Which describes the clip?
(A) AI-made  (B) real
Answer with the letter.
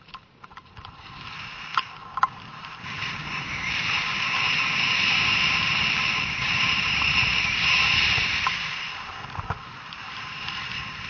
A